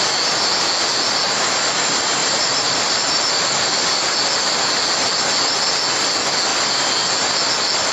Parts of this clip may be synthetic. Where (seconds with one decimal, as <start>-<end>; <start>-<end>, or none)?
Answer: 2.2-3.2